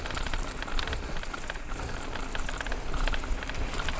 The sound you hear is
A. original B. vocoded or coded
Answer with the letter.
A